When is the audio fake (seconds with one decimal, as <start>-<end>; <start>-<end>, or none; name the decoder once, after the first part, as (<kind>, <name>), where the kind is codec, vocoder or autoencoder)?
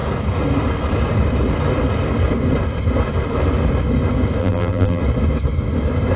4.4-5.0 (vocoder, BigVGAN v2)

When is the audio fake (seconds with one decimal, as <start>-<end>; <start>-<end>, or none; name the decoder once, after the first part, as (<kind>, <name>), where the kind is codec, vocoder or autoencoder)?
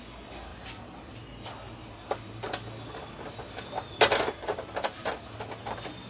none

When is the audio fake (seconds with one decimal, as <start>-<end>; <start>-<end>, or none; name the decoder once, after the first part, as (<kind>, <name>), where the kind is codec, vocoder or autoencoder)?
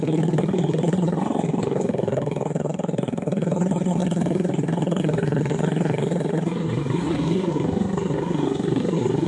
0.0-9.3 (codec, SNAC)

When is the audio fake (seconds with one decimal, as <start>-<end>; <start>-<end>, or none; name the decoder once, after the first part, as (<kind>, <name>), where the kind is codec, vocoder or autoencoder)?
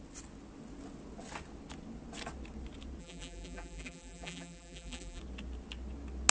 3.0-5.2 (vocoder, BigVGAN v2)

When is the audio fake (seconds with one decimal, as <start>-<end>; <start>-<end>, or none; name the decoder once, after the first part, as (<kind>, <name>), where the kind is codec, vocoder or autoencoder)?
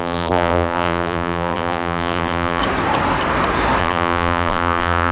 0.0-2.6 (vocoder, BigVGAN v2); 3.8-5.1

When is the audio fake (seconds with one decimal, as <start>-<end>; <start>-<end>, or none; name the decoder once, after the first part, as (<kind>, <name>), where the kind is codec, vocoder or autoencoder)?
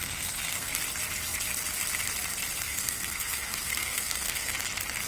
0.0-0.8 (codec, SNAC); 2.7-4.5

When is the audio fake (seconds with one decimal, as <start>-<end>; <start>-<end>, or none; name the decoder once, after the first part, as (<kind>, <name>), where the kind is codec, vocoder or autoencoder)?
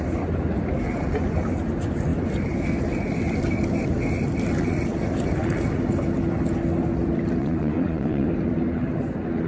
7.4-8.3 (vocoder, Vocos)